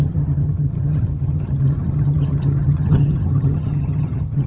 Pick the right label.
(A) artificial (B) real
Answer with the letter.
A